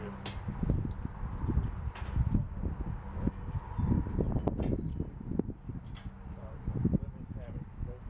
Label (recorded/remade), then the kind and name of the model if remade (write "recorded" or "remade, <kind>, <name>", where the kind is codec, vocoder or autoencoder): recorded